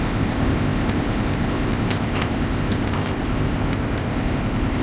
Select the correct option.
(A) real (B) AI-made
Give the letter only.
B